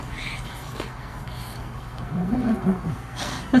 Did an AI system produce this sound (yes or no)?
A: yes